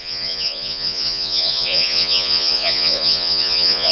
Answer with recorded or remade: remade